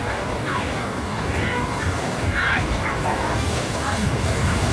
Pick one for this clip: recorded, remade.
remade